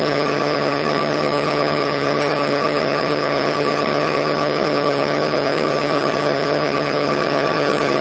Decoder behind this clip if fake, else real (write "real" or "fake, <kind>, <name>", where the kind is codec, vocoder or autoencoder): fake, vocoder, HiFi-GAN